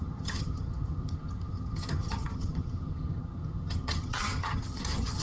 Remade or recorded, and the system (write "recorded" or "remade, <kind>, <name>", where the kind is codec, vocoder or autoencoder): remade, vocoder, HiFi-GAN